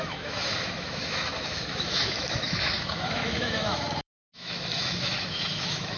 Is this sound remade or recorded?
remade